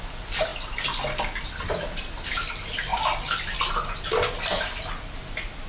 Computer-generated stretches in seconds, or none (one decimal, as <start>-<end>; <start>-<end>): none